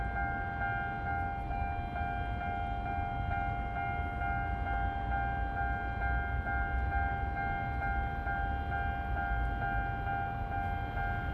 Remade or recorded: recorded